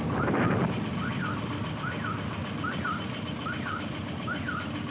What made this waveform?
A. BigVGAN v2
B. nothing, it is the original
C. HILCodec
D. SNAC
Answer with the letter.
B